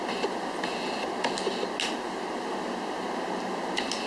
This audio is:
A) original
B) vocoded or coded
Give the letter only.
A